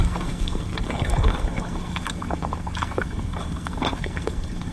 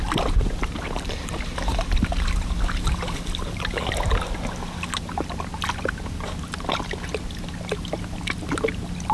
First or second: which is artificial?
first